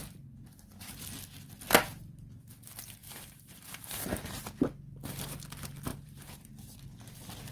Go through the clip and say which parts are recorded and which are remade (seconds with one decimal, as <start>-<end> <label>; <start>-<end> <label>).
0.0-3.0 recorded; 3.0-4.4 remade; 4.4-5.9 recorded; 5.9-6.5 remade; 6.5-7.5 recorded